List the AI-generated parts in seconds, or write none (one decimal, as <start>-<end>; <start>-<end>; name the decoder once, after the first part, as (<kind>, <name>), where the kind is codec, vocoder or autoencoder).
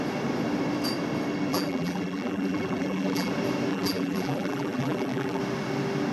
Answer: 1.5-3.3 (vocoder, BigVGAN v2); 3.7-5.4